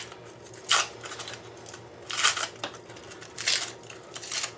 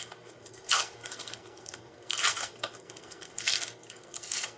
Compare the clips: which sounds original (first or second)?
first